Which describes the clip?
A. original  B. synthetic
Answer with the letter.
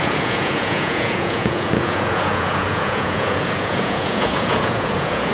B